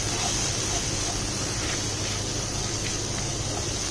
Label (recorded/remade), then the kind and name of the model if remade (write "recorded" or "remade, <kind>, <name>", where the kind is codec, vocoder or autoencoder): recorded